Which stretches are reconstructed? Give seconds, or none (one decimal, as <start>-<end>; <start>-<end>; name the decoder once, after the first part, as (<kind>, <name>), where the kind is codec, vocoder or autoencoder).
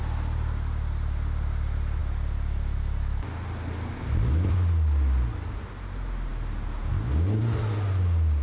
none